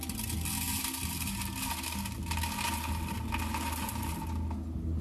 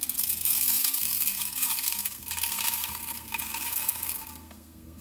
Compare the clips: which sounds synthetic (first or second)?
second